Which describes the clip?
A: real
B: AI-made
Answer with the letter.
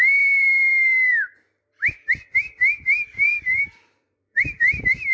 B